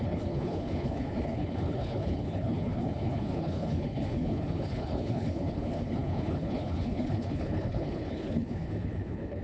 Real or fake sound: fake